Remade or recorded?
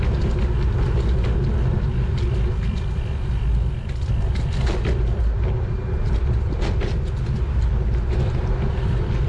recorded